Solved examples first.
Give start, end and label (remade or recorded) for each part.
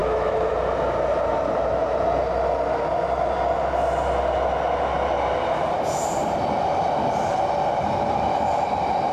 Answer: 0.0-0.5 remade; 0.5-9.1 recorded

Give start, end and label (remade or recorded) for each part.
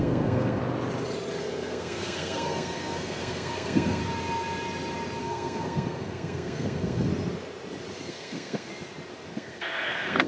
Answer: 0.0-0.6 remade; 0.6-1.4 recorded; 1.4-4.0 remade; 4.0-5.2 recorded; 5.2-7.1 remade; 7.1-8.1 recorded; 8.1-8.7 remade; 8.7-9.3 recorded; 9.3-10.3 remade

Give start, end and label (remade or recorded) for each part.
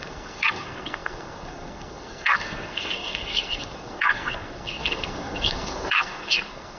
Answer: 0.0-6.8 remade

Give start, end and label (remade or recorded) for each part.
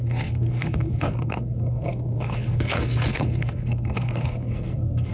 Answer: 0.0-5.1 remade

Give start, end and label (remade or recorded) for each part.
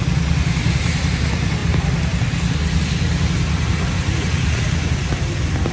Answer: 0.0-5.7 recorded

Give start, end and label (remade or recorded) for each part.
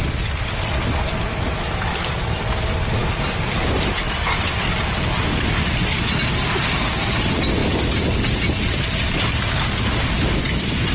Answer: 0.0-10.9 recorded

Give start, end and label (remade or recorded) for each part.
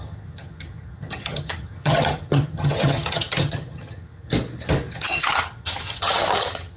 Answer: 0.0-4.3 remade; 4.3-4.9 recorded; 4.9-6.8 remade